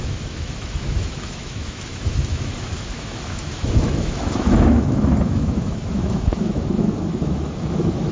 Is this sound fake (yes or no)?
yes